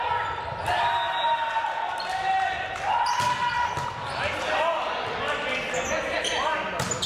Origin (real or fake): real